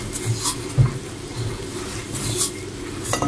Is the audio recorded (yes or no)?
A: yes